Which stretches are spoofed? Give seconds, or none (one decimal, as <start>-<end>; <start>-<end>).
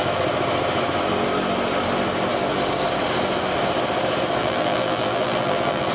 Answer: 4.4-5.9